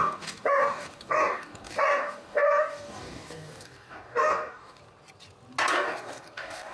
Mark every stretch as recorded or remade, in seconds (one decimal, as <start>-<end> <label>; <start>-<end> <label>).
0.0-4.8 remade; 4.8-5.7 recorded; 5.7-6.7 remade